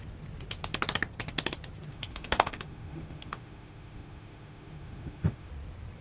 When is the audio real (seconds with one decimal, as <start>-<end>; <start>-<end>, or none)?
0.0-1.9; 5.5-6.0